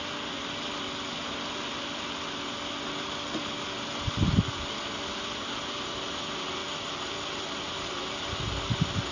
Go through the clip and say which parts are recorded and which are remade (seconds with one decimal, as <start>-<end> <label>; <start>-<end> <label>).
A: 0.0-9.1 recorded